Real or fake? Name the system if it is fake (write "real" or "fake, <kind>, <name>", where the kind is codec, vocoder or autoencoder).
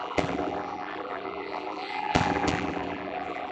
fake, vocoder, BigVGAN v2